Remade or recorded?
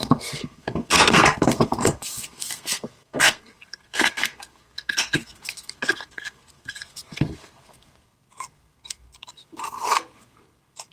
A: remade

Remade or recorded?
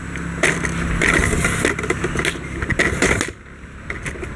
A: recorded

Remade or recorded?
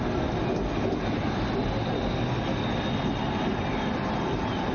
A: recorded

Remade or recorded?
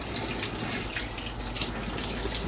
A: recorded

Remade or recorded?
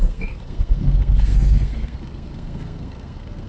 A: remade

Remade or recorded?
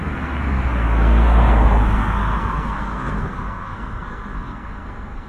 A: remade